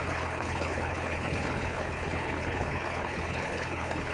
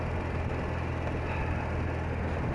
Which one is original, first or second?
second